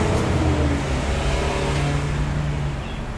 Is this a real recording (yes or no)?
yes